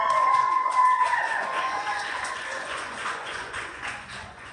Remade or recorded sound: remade